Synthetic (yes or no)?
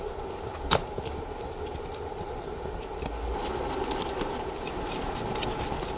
no